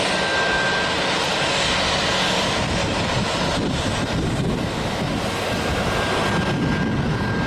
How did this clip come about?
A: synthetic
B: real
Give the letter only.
B